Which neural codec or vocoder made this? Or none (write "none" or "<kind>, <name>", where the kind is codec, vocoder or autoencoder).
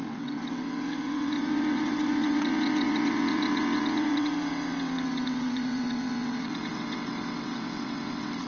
vocoder, WaveNeXt